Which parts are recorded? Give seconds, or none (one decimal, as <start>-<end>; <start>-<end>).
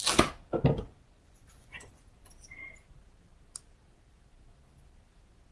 0.0-0.8; 2.1-5.5